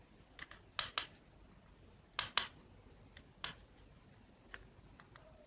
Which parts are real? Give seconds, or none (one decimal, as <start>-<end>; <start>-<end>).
0.0-5.5